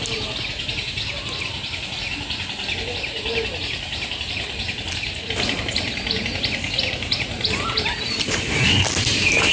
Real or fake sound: real